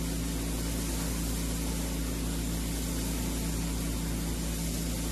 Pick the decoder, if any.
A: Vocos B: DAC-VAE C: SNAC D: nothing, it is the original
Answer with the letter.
D